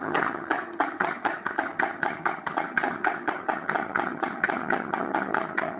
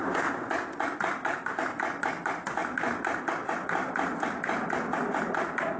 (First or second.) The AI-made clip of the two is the first